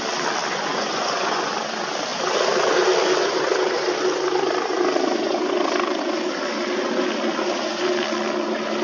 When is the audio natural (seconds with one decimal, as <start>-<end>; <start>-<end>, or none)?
0.0-0.5; 1.5-8.8